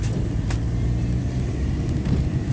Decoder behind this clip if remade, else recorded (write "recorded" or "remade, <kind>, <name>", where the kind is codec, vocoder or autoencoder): recorded